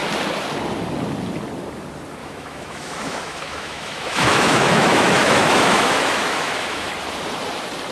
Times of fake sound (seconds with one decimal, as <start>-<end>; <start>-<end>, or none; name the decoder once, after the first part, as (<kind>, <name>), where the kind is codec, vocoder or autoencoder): 2.2-6.9 (autoencoder, DAC-VAE)